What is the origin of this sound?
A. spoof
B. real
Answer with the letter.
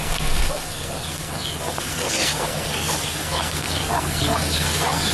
A